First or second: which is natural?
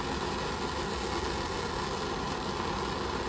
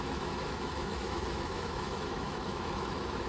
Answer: first